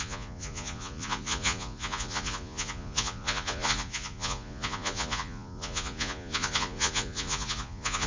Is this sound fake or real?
fake